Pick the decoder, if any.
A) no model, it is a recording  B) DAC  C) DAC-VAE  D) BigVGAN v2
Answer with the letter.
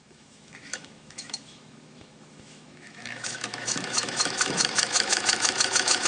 C